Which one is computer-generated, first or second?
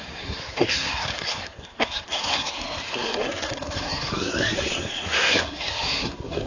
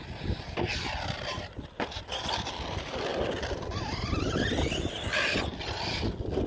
first